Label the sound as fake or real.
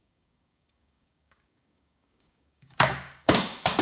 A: fake